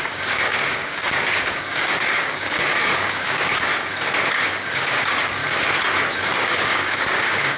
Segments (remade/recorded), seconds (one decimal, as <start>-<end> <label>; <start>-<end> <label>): 0.0-3.7 remade; 3.7-4.3 recorded; 4.3-5.4 remade; 5.4-6.2 recorded; 6.2-7.6 remade

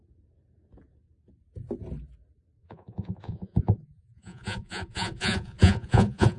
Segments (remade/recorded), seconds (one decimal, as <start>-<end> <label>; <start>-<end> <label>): 0.0-2.6 recorded; 2.6-6.4 remade

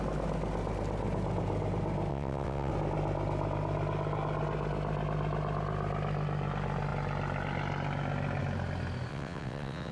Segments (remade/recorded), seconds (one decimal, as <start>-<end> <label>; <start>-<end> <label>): 0.0-2.1 recorded; 2.1-2.7 remade; 2.7-9.1 recorded; 9.1-9.9 remade